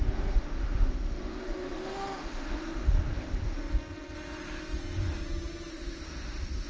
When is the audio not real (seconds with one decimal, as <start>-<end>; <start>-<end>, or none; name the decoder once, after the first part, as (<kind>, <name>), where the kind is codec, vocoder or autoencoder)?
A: 0.0-3.6 (autoencoder, DAC-VAE); 5.7-6.7